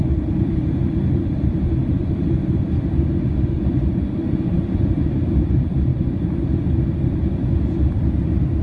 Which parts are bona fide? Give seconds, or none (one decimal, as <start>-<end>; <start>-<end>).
0.0-8.6